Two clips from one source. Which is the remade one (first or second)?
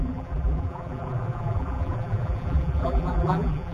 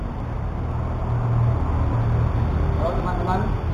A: first